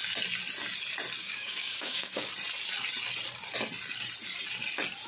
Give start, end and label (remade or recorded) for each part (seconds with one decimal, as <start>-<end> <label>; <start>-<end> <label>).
0.0-1.2 recorded; 1.2-2.3 remade; 2.3-5.1 recorded